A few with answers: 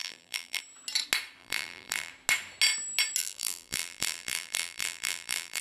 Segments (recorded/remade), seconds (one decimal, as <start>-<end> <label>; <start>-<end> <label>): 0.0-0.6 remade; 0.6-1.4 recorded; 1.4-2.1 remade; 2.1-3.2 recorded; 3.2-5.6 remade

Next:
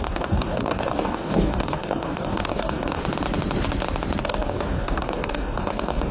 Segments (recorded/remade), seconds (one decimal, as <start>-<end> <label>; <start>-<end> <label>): 0.0-3.0 remade; 3.0-4.2 recorded; 4.2-6.1 remade

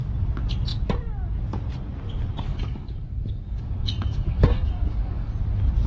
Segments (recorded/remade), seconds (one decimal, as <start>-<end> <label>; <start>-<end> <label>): 0.0-2.5 recorded; 2.5-5.3 remade; 5.3-5.9 recorded